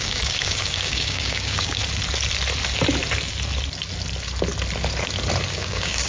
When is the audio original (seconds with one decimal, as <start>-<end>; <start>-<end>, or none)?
1.8-5.5